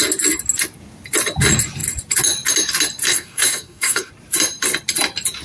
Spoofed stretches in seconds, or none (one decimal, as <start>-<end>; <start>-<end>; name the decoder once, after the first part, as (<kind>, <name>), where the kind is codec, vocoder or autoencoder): 3.1-4.1 (codec, DAC)